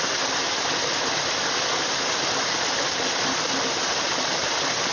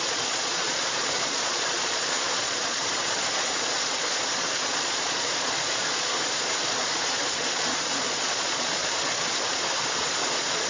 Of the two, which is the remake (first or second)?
second